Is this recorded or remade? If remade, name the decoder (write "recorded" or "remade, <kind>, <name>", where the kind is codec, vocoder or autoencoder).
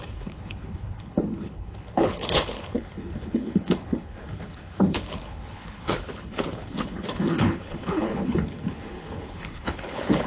remade, codec, HILCodec